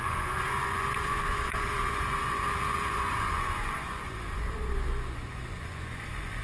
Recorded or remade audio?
remade